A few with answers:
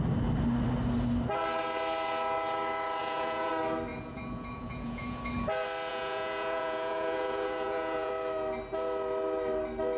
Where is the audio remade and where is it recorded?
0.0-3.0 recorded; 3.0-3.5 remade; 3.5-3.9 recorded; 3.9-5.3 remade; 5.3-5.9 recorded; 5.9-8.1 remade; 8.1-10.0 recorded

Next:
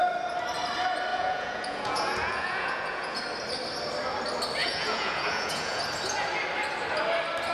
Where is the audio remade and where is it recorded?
0.0-1.1 recorded; 1.1-3.2 remade; 3.2-4.6 recorded; 4.6-5.8 remade; 5.8-7.5 recorded

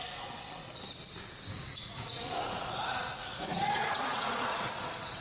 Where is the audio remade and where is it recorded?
0.0-1.5 recorded; 1.5-4.6 remade; 4.6-5.2 recorded

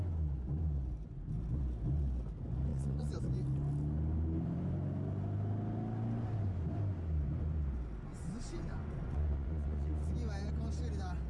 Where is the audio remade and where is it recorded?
0.0-2.7 recorded; 2.7-3.2 remade; 3.2-8.1 recorded; 8.1-10.1 remade; 10.1-11.3 recorded

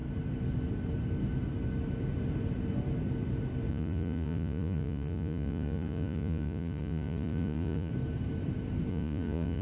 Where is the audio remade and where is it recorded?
0.0-3.7 recorded; 3.7-7.9 remade; 7.9-8.9 recorded; 8.9-9.6 remade

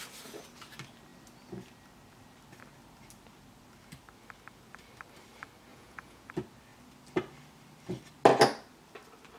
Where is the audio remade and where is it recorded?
0.0-5.7 recorded; 5.7-6.3 remade; 6.3-9.4 recorded

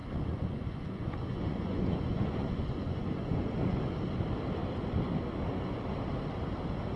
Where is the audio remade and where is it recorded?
0.0-3.8 remade; 3.8-7.0 recorded

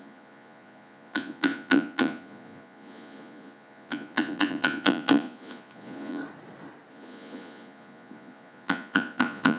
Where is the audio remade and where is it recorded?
0.0-6.2 remade; 6.2-6.9 recorded; 6.9-9.6 remade